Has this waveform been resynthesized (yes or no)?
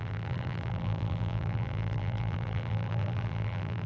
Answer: yes